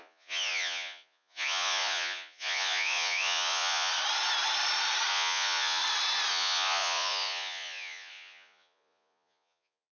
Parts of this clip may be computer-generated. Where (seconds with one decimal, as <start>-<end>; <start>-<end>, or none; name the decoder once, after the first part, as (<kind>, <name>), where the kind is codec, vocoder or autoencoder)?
0.0-3.9 (vocoder, Vocos); 5.1-5.8; 6.3-10.0